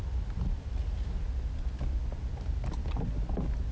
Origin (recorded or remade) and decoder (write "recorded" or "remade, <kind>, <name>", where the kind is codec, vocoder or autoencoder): recorded